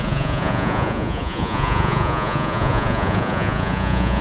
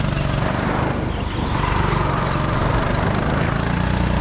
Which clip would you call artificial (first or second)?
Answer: first